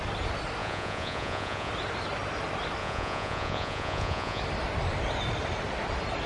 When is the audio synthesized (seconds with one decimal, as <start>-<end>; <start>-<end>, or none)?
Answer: 0.6-1.7; 2.8-4.4